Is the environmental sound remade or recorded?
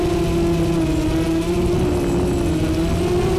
recorded